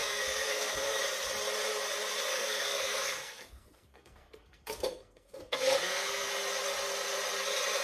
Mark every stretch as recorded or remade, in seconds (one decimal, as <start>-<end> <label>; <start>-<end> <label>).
0.0-1.0 remade; 1.0-2.3 recorded; 2.3-6.3 remade; 6.3-7.8 recorded